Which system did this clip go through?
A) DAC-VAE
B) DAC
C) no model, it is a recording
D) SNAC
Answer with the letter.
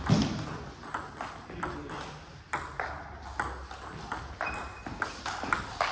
C